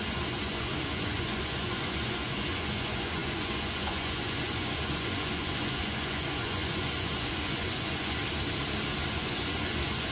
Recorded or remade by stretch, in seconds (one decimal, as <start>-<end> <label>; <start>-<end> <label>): 0.0-8.2 remade; 8.2-9.1 recorded; 9.1-10.1 remade

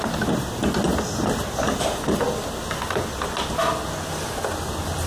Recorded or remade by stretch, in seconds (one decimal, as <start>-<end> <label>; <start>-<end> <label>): 0.0-5.1 recorded